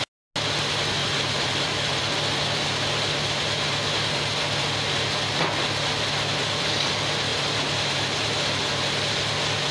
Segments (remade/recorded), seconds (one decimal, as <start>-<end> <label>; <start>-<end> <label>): 0.0-1.0 recorded; 1.0-2.0 remade; 2.0-7.3 recorded; 7.3-9.2 remade; 9.2-9.7 recorded